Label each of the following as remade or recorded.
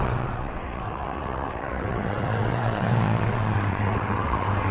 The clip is remade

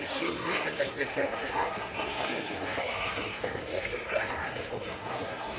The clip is remade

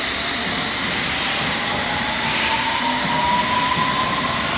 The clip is recorded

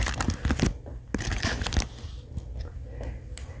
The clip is recorded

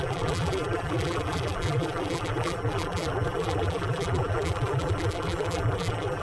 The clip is remade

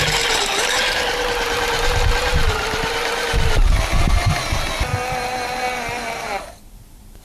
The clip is recorded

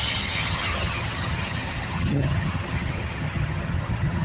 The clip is remade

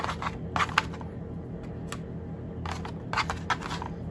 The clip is recorded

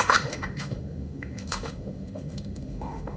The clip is remade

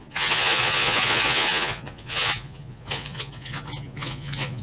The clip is remade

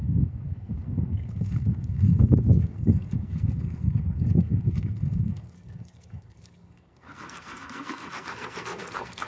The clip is remade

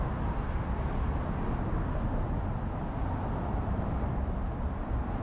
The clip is recorded